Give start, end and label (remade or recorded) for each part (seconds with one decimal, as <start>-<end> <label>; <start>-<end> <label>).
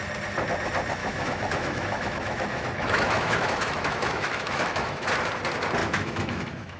0.0-1.0 recorded; 1.0-5.1 remade; 5.1-5.8 recorded; 5.8-6.8 remade